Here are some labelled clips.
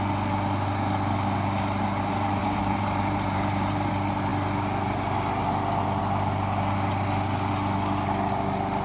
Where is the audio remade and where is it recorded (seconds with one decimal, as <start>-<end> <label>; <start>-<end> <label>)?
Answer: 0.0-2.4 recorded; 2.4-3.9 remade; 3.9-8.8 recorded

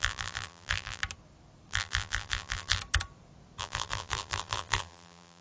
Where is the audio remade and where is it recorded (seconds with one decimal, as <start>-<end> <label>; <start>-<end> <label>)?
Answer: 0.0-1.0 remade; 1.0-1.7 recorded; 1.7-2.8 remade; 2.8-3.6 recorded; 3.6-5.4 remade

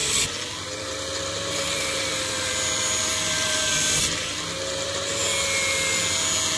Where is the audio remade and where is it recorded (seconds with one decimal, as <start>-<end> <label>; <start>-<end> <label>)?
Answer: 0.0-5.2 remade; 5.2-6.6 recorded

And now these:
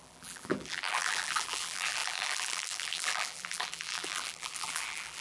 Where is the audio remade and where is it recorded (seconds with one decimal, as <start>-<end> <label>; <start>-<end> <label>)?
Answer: 0.0-5.2 remade

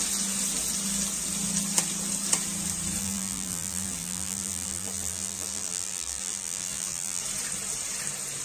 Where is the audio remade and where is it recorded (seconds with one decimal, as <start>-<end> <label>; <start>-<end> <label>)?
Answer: 0.0-3.0 recorded; 3.0-7.2 remade; 7.2-8.4 recorded

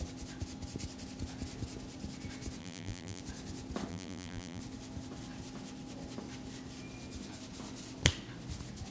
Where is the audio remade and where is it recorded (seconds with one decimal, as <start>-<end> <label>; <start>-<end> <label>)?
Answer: 0.0-2.6 recorded; 2.6-3.2 remade; 3.2-3.9 recorded; 3.9-4.6 remade; 4.6-8.9 recorded

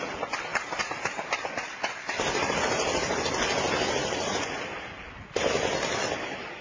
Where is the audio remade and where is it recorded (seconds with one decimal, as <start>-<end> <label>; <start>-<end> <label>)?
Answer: 0.0-0.5 recorded; 0.5-2.7 remade; 2.7-4.0 recorded; 4.0-4.6 remade; 4.6-6.6 recorded